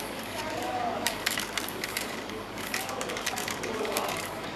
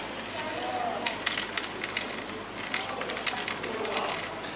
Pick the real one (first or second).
second